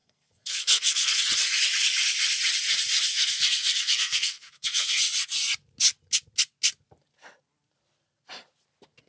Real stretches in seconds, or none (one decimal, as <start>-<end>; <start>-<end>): 1.2-3.1; 4.9-9.1